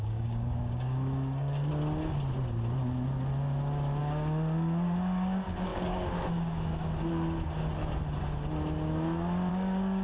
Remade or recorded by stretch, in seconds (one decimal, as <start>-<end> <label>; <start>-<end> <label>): 0.0-1.7 remade; 1.7-4.0 recorded; 4.0-6.7 remade; 6.7-9.5 recorded; 9.5-10.0 remade